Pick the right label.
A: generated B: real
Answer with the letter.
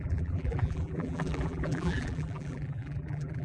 A